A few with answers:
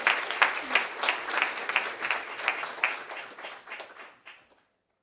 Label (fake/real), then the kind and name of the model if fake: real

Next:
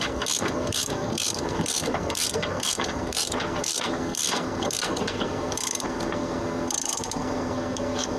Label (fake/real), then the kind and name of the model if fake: fake, codec, SNAC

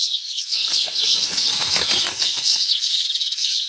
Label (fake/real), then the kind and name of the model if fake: fake, codec, SNAC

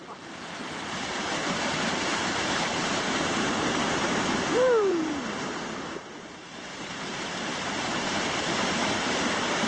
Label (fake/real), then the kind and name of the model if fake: fake, vocoder, BigVGAN v2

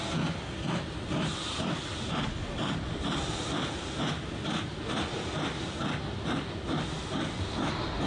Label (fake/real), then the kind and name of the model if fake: real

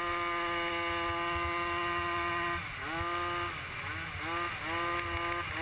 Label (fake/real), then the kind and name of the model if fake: real